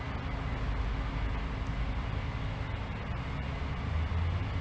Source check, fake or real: real